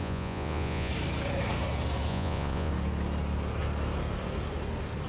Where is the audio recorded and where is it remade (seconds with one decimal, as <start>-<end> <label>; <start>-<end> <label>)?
0.0-0.9 remade; 0.9-2.1 recorded; 2.1-2.7 remade; 2.7-5.1 recorded